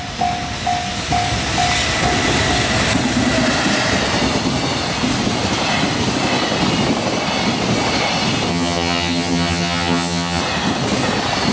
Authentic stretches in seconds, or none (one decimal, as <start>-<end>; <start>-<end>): 0.0-8.5; 10.4-11.5